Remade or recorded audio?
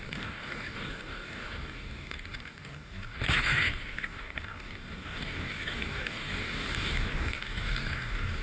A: remade